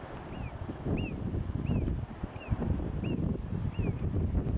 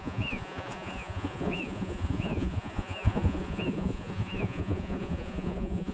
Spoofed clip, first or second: second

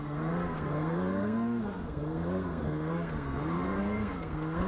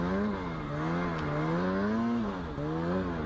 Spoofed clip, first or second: first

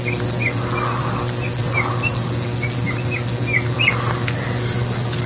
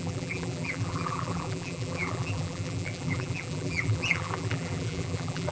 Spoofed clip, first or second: second